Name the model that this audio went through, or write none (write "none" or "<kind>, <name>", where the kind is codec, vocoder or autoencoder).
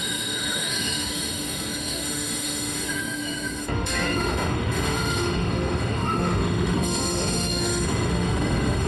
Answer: autoencoder, DAC-VAE